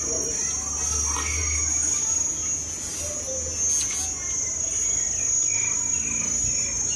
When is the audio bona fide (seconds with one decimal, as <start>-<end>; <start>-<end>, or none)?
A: 0.0-7.0